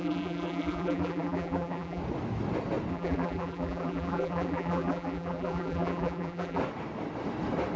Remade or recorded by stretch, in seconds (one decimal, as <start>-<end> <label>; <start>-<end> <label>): 0.0-2.0 remade; 2.0-2.9 recorded; 2.9-6.6 remade; 6.6-7.8 recorded